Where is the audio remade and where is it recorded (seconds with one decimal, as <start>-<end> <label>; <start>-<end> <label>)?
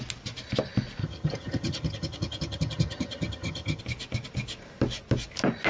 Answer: 0.0-1.0 recorded; 1.0-3.8 remade; 3.8-5.7 recorded